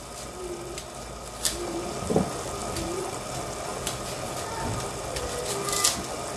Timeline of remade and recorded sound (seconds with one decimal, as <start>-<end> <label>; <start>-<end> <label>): 0.0-6.4 recorded